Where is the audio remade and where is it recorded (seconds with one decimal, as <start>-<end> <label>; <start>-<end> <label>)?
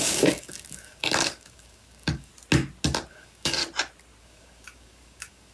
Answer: 0.0-2.3 remade; 2.3-3.1 recorded; 3.1-3.6 remade; 3.6-4.2 recorded; 4.2-5.5 remade